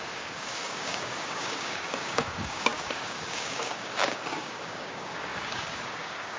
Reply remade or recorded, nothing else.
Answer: remade